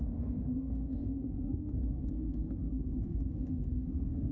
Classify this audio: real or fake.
fake